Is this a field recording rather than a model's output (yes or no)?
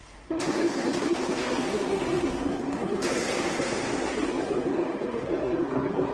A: no